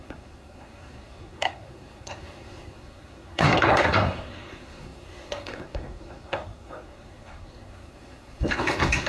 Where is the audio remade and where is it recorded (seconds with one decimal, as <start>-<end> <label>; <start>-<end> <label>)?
0.0-9.1 remade